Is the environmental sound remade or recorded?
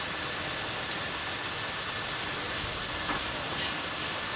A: recorded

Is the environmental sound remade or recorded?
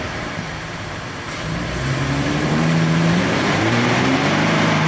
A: remade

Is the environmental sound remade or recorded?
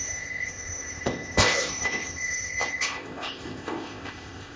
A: remade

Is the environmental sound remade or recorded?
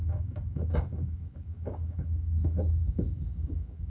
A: remade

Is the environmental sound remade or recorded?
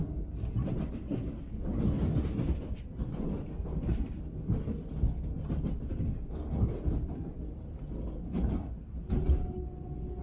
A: recorded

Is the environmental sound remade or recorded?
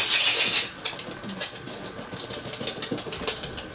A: recorded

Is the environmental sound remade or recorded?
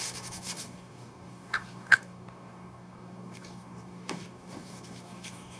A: remade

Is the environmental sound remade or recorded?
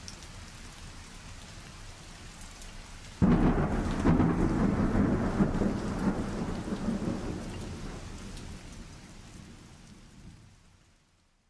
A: recorded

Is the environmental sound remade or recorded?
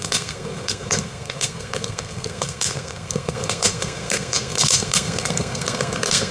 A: remade